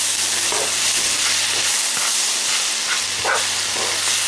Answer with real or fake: real